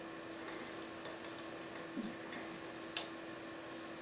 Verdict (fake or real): real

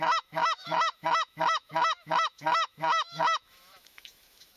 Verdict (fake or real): fake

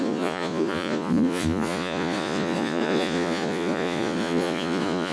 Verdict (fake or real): fake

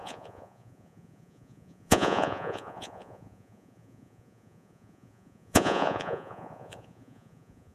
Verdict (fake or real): fake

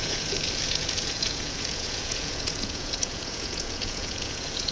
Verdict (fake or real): fake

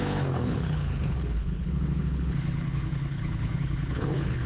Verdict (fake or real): fake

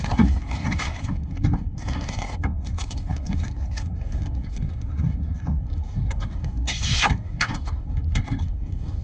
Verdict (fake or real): fake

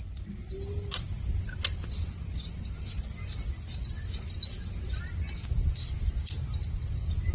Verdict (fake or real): real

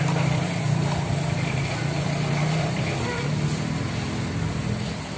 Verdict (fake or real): fake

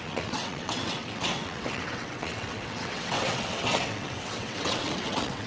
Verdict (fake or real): fake